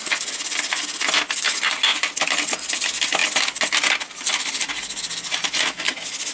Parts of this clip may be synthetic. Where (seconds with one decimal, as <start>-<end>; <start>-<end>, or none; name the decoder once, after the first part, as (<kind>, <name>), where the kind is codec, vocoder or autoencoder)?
none